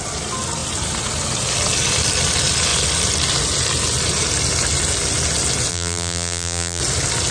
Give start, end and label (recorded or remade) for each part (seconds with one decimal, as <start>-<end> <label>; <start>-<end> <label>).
0.0-5.7 recorded; 5.7-6.8 remade; 6.8-7.3 recorded